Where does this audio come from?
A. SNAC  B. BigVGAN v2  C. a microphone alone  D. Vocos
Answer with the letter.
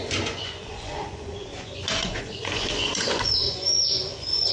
D